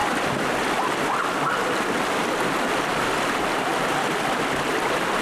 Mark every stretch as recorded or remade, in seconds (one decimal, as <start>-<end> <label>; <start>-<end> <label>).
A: 0.0-5.2 recorded